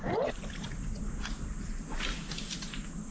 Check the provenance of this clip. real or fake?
real